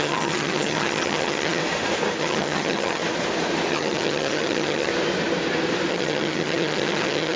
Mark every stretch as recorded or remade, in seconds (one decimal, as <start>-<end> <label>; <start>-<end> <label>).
0.0-1.6 remade; 1.6-2.2 recorded; 2.2-3.0 remade; 3.0-3.7 recorded; 3.7-4.9 remade; 4.9-5.9 recorded; 5.9-7.4 remade